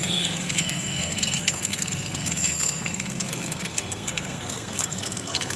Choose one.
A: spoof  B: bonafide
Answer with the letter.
A